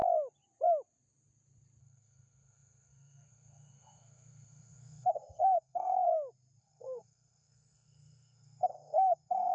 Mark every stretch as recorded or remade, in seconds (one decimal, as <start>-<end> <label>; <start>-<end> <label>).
0.0-1.8 recorded; 1.8-6.1 remade; 6.1-6.6 recorded; 6.6-9.5 remade